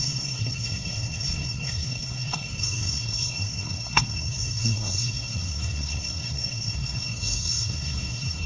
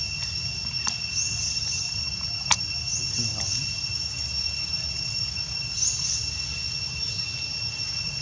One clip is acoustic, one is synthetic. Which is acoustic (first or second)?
second